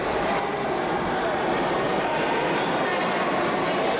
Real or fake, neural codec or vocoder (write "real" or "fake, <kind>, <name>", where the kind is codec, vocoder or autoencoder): real